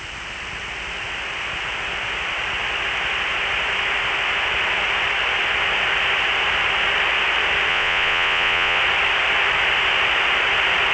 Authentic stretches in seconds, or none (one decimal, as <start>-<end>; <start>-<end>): 0.0-7.7; 8.8-10.9